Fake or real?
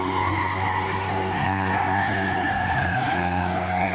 fake